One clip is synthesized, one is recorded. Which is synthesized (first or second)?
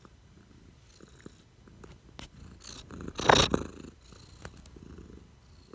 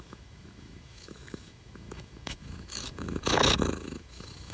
second